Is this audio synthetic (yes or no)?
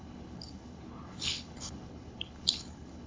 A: yes